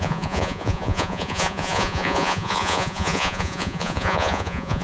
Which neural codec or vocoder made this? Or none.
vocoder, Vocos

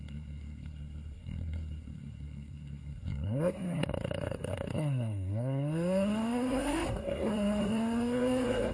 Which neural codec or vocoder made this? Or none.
codec, SNAC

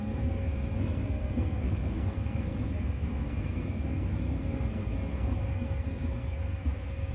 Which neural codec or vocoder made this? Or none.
codec, SNAC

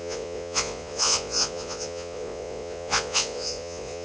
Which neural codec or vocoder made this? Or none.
vocoder, Vocos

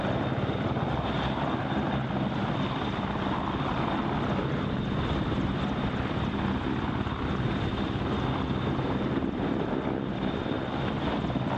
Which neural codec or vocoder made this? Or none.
none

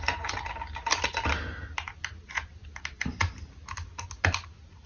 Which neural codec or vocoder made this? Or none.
none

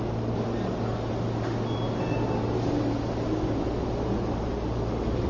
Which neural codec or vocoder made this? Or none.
none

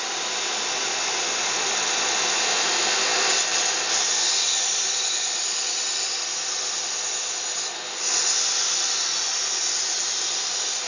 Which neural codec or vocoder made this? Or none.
none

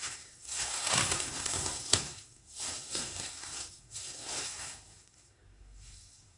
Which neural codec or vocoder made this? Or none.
codec, SNAC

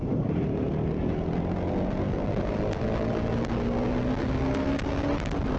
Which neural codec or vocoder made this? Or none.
none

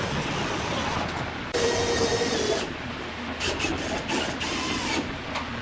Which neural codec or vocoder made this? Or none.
none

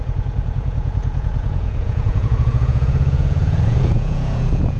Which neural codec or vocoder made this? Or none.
vocoder, Vocos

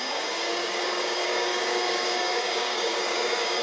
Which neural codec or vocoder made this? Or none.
codec, DAC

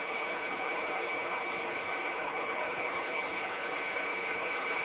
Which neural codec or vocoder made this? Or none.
codec, HILCodec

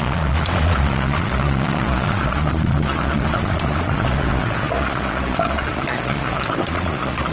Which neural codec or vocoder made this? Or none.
vocoder, Vocos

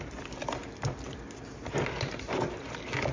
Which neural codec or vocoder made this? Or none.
none